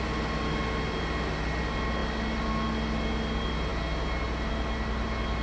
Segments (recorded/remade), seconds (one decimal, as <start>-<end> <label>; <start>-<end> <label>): 0.0-5.4 recorded